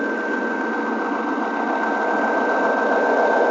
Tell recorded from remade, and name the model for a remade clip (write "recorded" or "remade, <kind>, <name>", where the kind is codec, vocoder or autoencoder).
recorded